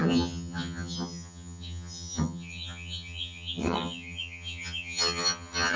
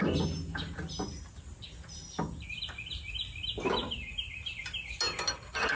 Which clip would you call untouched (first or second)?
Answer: second